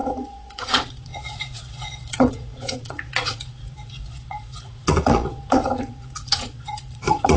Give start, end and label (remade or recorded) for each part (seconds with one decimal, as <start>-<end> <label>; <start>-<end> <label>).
0.0-7.4 remade